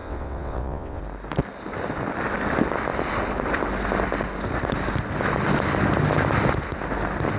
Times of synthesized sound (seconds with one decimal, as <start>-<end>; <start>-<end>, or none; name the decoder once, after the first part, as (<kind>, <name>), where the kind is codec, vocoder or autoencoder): 0.0-1.0 (vocoder, WaveNeXt)